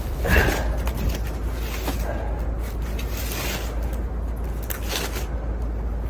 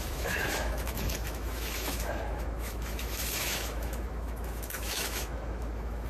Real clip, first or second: first